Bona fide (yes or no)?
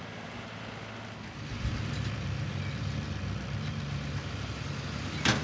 yes